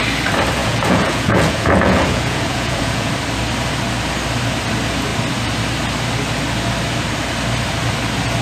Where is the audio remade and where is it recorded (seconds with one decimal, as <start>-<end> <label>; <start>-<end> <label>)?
0.0-0.6 recorded; 0.6-3.1 remade; 3.1-8.4 recorded